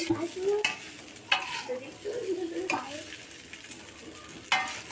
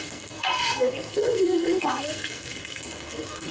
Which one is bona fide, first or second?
first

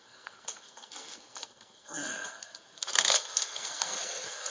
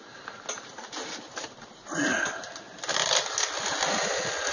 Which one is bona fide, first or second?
second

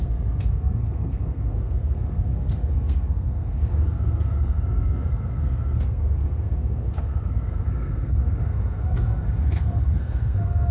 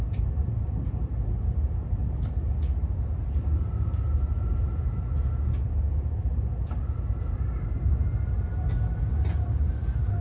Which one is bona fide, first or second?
second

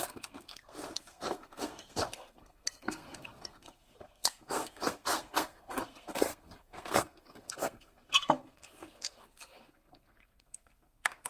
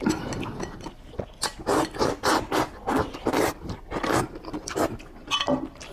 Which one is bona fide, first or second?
second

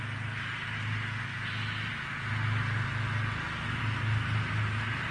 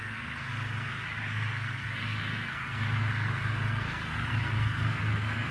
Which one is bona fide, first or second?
first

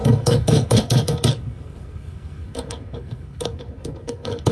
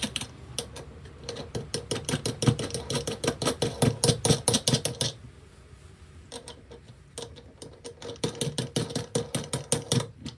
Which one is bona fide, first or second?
second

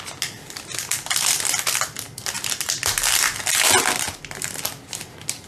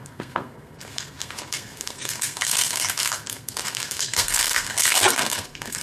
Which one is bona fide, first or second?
first